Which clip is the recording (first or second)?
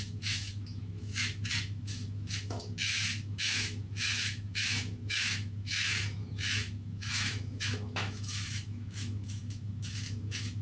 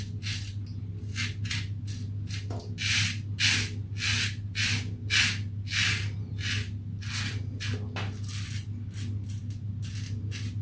second